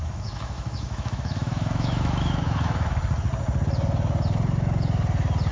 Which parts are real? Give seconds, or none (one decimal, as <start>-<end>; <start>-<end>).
3.0-5.5